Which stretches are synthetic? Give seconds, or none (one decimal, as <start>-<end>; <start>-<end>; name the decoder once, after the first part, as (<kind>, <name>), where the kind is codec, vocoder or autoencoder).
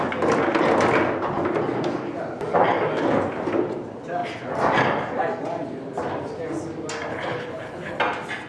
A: 7.1-8.0 (codec, HILCodec)